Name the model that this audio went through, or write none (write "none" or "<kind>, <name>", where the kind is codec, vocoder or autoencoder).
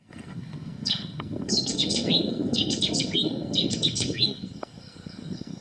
codec, SNAC